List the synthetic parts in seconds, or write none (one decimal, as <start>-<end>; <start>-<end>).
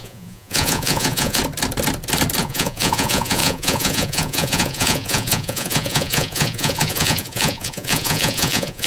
0.0-1.4; 2.4-8.9